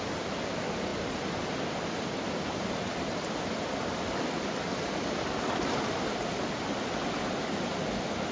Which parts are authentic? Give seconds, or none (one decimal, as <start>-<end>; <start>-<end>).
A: 0.0-8.3